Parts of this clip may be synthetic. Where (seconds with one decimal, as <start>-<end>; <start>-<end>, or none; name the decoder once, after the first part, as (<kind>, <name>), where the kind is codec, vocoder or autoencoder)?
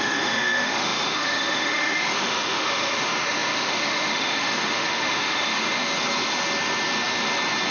0.0-5.8 (autoencoder, DAC-VAE)